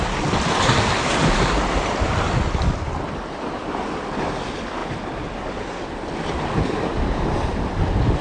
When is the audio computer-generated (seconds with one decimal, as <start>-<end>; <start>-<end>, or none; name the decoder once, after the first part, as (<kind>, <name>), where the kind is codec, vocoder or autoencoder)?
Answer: none